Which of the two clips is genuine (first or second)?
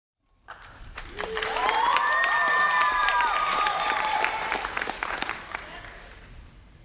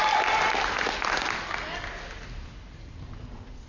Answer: second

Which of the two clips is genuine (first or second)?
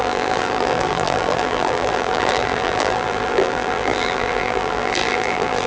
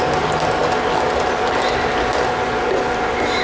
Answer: second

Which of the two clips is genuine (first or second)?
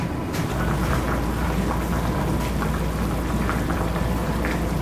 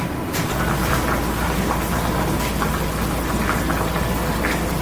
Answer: second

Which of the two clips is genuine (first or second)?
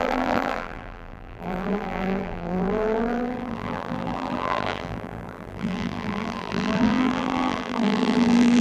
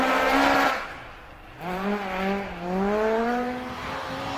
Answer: second